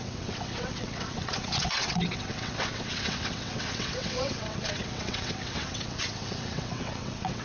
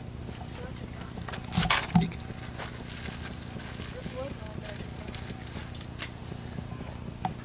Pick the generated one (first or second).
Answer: first